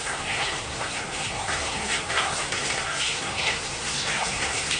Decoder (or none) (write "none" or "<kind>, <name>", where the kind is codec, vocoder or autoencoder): codec, SNAC